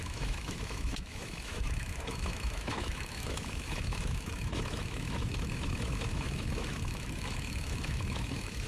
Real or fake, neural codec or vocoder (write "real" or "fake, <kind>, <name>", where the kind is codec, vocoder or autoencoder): fake, autoencoder, DAC-VAE